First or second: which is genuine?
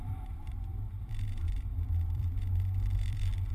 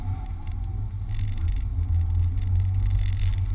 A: second